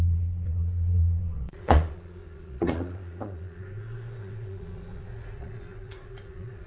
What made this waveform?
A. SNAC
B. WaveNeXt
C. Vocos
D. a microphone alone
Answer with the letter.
C